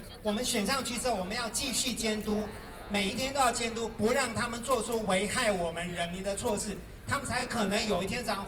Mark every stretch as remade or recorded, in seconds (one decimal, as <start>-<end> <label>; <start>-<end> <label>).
0.0-2.3 recorded; 2.3-3.1 remade; 3.1-7.4 recorded; 7.4-8.0 remade; 8.0-8.5 recorded

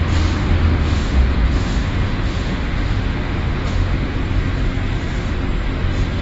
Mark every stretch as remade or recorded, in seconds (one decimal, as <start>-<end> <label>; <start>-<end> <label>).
0.0-0.4 recorded; 0.4-4.1 remade; 4.1-6.2 recorded

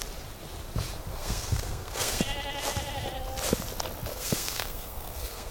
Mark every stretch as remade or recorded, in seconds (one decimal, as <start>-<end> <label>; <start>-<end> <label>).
0.0-1.1 recorded; 1.1-2.2 remade; 2.2-4.1 recorded; 4.1-5.5 remade